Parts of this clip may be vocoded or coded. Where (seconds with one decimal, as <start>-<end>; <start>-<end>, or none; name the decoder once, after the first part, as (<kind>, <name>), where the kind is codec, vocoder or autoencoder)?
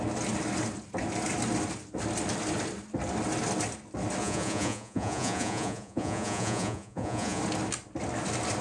4.2-7.4 (vocoder, Vocos)